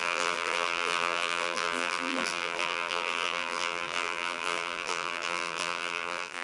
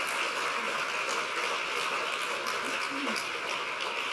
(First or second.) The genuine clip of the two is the second